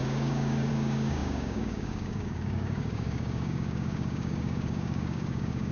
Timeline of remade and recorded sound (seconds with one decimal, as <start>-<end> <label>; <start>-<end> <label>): 0.0-5.7 remade